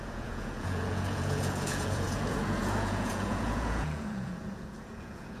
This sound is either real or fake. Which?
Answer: fake